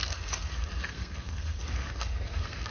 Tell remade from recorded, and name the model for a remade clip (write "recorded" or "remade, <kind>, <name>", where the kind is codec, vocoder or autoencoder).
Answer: remade, codec, SNAC